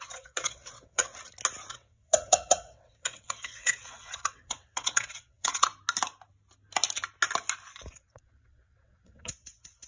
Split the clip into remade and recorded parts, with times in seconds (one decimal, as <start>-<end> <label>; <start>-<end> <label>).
0.0-1.1 remade; 1.1-1.7 recorded; 1.7-5.7 remade; 5.7-7.9 recorded; 7.9-9.9 remade